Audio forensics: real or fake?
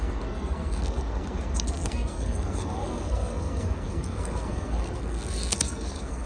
fake